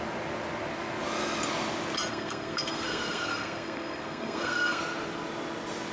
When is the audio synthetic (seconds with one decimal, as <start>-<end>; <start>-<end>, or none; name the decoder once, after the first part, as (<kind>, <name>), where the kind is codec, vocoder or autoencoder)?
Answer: 2.1-4.8 (codec, SNAC)